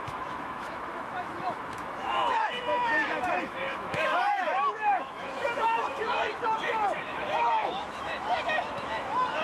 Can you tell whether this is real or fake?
fake